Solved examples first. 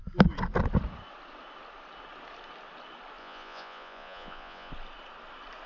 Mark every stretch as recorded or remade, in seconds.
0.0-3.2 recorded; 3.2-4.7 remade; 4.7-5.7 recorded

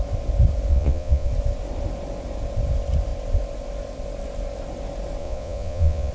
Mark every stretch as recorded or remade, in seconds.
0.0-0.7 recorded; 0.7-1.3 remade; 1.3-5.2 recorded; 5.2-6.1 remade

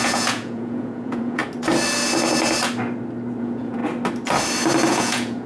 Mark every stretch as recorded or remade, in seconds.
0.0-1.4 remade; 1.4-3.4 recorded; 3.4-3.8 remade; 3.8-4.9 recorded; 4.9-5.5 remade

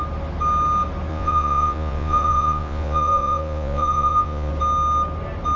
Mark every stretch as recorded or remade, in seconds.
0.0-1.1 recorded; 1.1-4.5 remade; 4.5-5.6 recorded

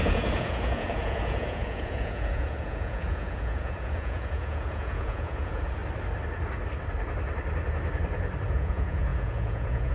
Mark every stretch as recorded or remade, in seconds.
0.0-5.8 remade; 5.8-8.5 recorded; 8.5-9.9 remade

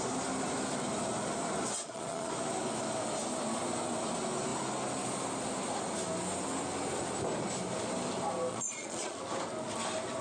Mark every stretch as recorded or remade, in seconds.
0.0-1.8 recorded; 1.8-2.3 remade; 2.3-8.5 recorded; 8.5-9.2 remade; 9.2-10.2 recorded

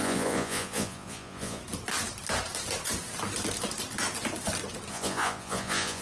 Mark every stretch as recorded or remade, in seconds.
0.0-1.6 remade; 1.6-4.9 recorded; 4.9-6.0 remade

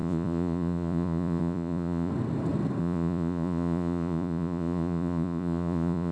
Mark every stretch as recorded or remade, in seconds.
0.0-2.1 remade; 2.1-2.8 recorded; 2.8-6.1 remade